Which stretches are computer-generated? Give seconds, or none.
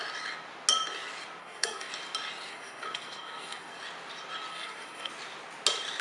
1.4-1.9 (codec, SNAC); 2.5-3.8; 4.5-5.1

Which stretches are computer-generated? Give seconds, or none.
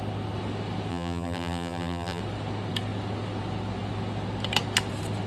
0.9-2.2 (vocoder, BigVGAN v2)